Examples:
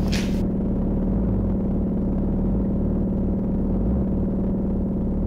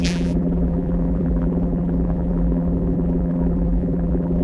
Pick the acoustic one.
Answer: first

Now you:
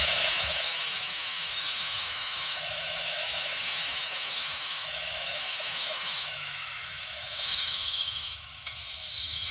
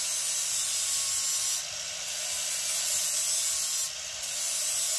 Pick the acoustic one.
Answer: second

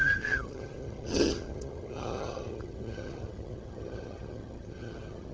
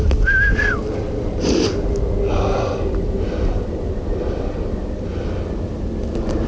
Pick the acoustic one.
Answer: second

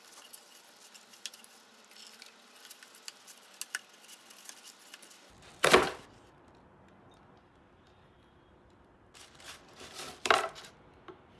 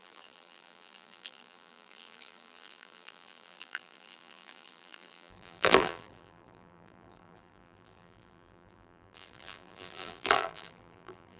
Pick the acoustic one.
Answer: first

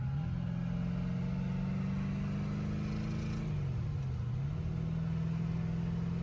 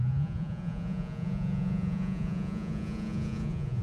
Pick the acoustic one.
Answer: first